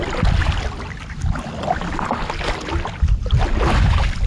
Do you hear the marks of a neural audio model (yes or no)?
no